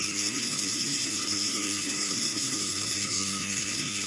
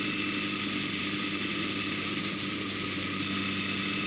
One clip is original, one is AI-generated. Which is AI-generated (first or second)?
first